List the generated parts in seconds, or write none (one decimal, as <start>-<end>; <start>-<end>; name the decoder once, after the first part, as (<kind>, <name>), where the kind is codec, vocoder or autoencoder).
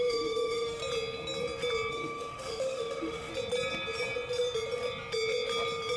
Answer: 0.0-0.8 (autoencoder, DAC-VAE); 1.9-3.3